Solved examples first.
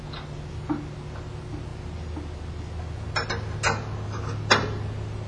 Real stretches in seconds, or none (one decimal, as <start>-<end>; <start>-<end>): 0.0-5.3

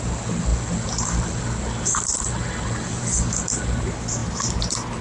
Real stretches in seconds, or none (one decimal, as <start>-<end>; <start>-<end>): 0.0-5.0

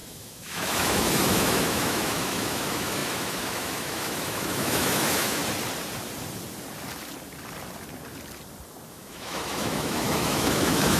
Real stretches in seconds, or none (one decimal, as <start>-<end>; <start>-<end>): 5.4-8.9